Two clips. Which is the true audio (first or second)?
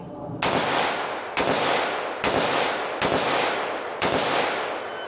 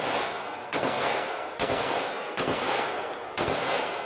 first